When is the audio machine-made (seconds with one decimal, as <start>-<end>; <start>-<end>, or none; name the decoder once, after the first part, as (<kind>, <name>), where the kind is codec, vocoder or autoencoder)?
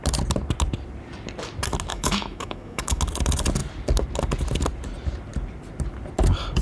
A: 1.9-3.0 (autoencoder, DAC-VAE)